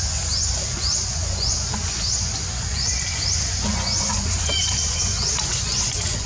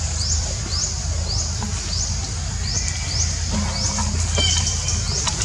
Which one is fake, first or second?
first